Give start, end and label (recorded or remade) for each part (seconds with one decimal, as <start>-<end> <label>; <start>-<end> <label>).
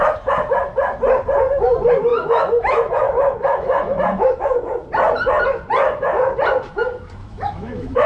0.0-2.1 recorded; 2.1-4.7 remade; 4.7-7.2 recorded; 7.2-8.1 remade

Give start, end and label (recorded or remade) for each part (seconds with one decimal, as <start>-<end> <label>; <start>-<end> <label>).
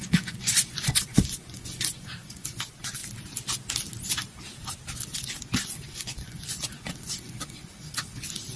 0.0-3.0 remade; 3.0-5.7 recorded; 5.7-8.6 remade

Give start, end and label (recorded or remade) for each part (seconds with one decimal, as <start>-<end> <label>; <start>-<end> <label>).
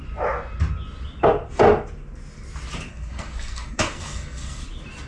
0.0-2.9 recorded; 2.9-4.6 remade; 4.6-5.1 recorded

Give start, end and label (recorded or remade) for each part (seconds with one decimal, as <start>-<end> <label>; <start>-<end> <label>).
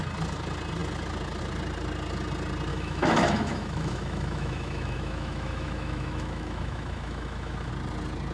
0.0-2.7 recorded; 2.7-7.7 remade; 7.7-8.3 recorded